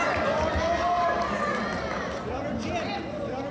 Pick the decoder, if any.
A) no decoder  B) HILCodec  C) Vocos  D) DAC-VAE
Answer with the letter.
A